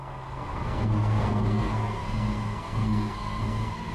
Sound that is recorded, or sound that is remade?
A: remade